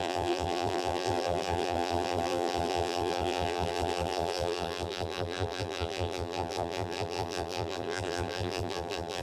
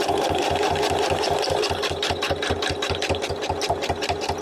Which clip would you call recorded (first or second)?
second